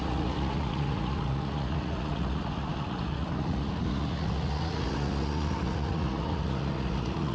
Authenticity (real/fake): fake